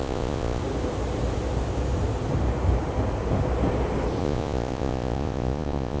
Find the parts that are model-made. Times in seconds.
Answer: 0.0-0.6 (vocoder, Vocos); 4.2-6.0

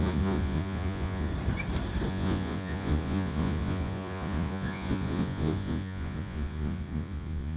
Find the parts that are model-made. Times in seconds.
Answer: 0.0-1.3 (vocoder, Vocos); 2.1-7.6